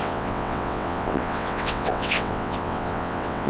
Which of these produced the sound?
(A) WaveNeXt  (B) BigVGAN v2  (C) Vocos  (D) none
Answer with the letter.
A